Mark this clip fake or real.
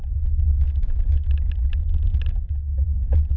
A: real